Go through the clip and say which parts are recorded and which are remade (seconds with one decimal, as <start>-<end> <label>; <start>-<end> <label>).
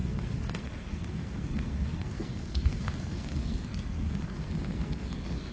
0.0-5.5 remade